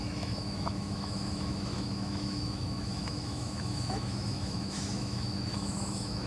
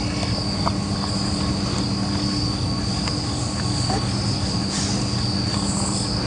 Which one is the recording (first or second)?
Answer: second